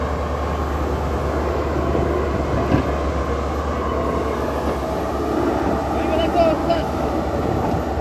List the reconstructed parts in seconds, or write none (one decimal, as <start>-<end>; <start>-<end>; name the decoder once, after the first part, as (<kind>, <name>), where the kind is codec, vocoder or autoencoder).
6.6-7.1 (autoencoder, DAC-VAE)